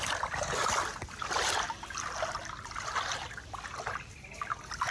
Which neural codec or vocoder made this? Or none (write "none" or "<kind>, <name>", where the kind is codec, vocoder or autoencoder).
none